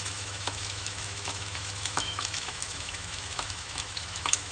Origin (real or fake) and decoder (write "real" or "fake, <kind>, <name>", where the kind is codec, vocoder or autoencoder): fake, autoencoder, DAC-VAE